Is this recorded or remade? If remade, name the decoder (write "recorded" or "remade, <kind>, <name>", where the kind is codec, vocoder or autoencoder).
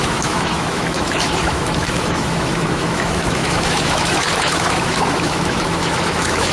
remade, autoencoder, DAC-VAE